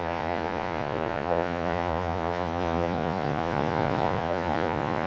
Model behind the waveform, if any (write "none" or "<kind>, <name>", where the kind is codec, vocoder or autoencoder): vocoder, Vocos